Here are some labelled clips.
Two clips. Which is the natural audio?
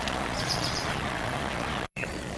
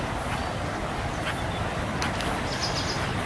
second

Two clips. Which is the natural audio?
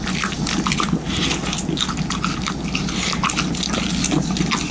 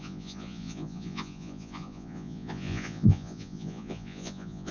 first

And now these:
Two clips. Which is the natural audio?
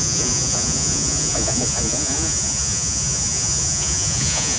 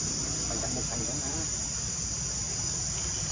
second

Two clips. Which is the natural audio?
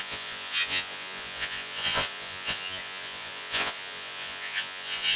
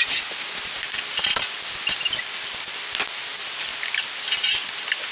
second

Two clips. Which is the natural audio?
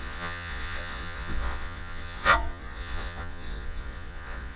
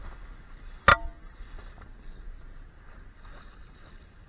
second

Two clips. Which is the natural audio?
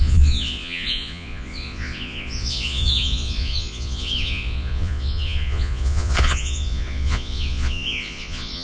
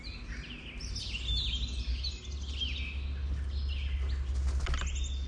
second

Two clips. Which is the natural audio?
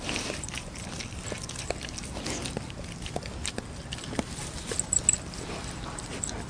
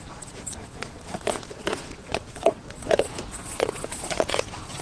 first